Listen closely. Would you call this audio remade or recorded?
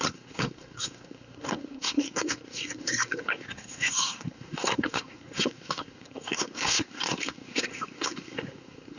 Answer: remade